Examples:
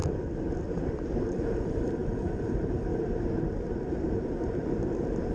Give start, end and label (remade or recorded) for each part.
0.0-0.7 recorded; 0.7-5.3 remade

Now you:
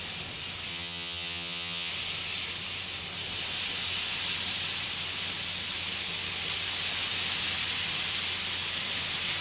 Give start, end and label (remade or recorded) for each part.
0.0-0.7 recorded; 0.7-1.9 remade; 1.9-9.4 recorded

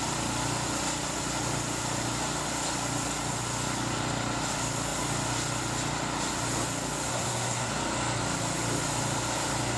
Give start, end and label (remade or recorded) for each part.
0.0-7.1 recorded; 7.1-7.7 remade; 7.7-9.8 recorded

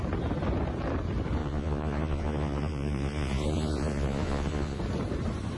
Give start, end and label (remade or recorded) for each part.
0.0-1.4 recorded; 1.4-4.8 remade; 4.8-5.6 recorded

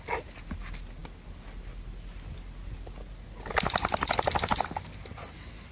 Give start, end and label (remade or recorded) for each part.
0.0-5.7 recorded